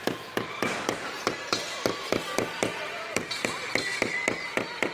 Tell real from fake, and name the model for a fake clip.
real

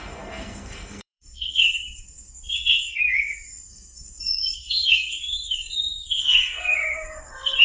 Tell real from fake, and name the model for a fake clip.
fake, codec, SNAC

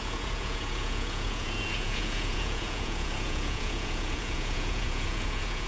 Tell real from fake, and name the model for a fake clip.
fake, vocoder, Vocos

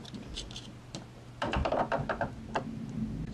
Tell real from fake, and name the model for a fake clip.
real